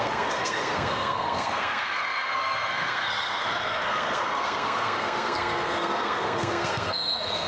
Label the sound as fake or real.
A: fake